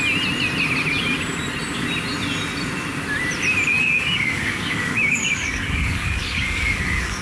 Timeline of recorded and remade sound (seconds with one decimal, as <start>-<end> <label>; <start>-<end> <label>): 0.0-3.8 recorded; 3.8-7.2 remade